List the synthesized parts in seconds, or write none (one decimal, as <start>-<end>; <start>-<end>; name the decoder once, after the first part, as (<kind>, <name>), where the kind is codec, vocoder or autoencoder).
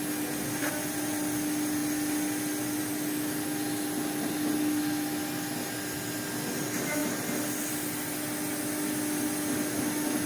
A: none